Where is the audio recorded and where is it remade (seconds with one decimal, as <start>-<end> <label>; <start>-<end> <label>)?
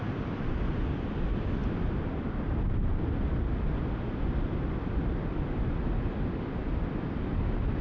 0.0-7.8 recorded